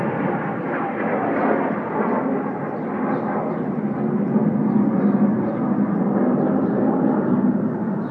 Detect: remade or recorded recorded